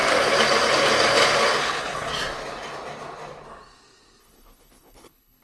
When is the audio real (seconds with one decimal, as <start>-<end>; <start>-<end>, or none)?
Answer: 0.0-1.6; 2.1-4.2

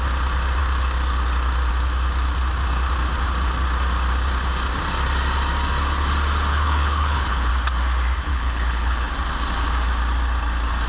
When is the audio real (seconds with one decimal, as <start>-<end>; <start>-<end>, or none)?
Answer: 0.0-6.5; 7.5-8.3; 9.1-10.9

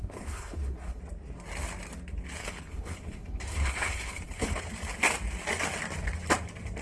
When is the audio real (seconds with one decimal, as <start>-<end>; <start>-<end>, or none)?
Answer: 1.0-2.4; 4.6-6.8

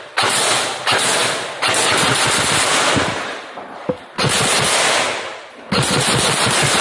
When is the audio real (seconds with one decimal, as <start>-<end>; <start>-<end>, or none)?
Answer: 0.0-6.8

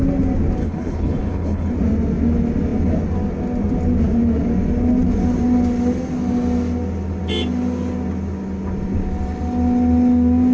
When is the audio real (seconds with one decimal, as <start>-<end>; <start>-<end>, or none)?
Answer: 0.0-0.6; 1.7-10.5

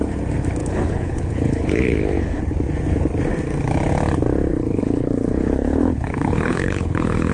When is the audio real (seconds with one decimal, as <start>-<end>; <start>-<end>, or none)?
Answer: 0.0-0.6; 2.4-4.5

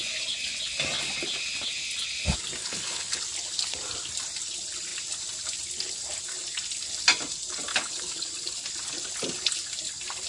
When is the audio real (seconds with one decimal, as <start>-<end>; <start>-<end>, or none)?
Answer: 0.0-2.6; 3.2-7.7; 8.3-10.3